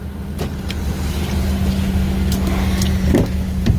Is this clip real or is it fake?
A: real